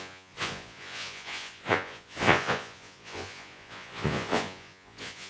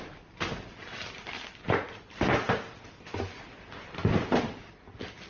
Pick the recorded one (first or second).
second